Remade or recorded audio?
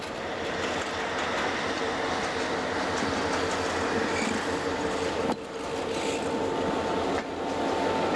recorded